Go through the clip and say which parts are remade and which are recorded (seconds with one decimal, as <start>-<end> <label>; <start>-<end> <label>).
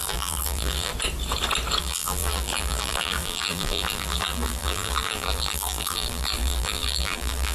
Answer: 0.0-0.9 remade; 0.9-1.8 recorded; 1.8-7.5 remade